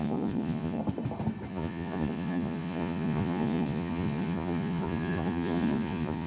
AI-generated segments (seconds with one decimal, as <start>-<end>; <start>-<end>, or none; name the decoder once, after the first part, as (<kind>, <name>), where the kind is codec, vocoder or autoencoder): 0.0-0.8 (vocoder, Vocos); 1.5-6.3

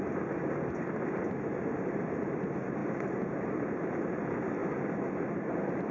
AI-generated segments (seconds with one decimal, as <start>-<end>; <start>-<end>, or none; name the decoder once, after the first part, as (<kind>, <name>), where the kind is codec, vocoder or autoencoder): none

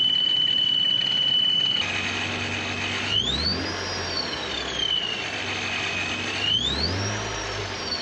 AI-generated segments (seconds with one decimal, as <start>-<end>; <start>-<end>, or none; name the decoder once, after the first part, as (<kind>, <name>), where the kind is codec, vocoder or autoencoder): none